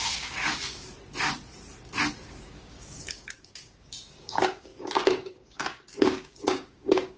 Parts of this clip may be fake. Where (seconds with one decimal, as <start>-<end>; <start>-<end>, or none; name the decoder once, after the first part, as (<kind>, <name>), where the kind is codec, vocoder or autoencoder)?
0.0-0.9 (codec, DAC); 2.2-7.2